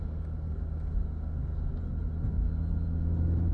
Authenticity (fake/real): real